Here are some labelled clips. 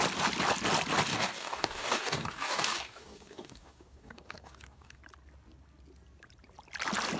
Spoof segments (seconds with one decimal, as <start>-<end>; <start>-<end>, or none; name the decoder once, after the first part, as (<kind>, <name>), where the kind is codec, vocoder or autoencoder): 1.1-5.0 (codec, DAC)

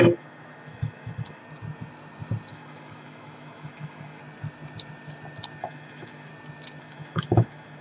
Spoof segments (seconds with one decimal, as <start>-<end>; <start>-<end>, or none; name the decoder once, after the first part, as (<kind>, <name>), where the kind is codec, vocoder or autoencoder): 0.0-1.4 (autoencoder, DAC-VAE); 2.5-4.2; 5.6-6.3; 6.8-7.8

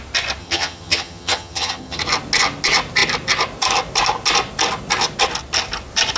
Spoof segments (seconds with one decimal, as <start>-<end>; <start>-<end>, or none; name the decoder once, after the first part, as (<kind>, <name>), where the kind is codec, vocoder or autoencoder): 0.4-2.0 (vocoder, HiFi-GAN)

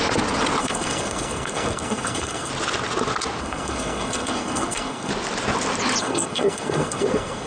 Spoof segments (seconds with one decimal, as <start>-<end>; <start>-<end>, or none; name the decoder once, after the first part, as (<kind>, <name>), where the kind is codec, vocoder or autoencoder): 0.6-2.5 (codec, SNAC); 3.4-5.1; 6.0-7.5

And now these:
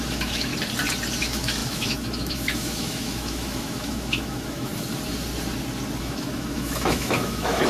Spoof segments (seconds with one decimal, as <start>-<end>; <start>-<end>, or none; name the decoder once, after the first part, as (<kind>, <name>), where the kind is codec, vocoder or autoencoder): 0.0-0.5 (autoencoder, DAC-VAE); 1.2-4.7; 6.0-7.7

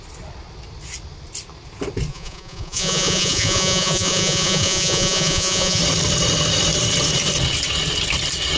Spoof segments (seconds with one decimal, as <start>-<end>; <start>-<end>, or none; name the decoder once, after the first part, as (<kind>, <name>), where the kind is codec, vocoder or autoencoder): 2.1-5.8 (vocoder, Vocos)

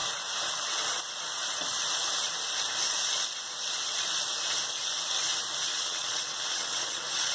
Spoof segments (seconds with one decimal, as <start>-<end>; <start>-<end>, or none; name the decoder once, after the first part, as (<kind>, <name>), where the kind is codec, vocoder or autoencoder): 5.7-7.3 (vocoder, WaveNeXt)

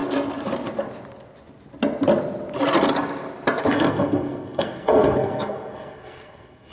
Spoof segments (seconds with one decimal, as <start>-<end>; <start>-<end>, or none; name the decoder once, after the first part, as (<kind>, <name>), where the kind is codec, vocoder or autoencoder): 3.7-6.7 (codec, SNAC)